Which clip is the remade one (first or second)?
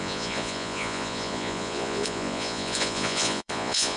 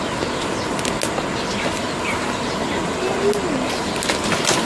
first